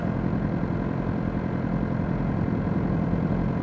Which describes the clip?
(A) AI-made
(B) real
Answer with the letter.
B